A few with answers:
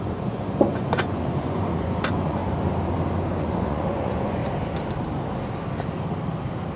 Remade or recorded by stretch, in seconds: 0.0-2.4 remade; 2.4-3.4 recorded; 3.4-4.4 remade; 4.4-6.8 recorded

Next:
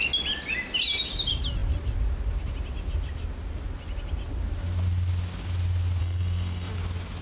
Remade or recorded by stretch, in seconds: 0.0-6.0 recorded; 6.0-6.7 remade; 6.7-7.2 recorded

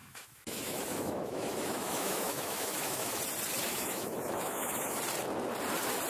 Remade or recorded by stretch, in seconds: 0.0-3.2 remade; 3.2-3.7 recorded; 3.7-5.0 remade; 5.0-6.1 recorded

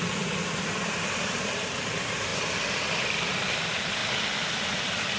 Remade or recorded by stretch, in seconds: 0.0-2.3 remade; 2.3-3.5 recorded; 3.5-4.0 remade; 4.0-5.2 recorded

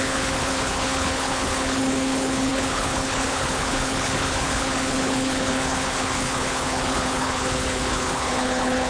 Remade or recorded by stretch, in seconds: 0.0-8.9 remade

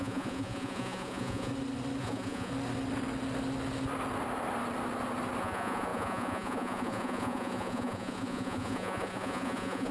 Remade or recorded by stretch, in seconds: 0.0-1.5 remade; 1.5-2.0 recorded; 2.0-2.5 remade; 2.5-5.4 recorded; 5.4-9.9 remade